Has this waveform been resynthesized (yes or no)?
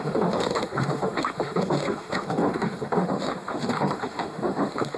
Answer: yes